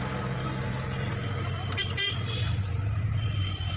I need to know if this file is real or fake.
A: real